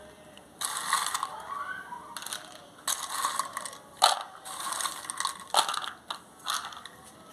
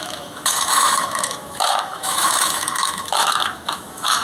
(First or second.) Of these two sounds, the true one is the first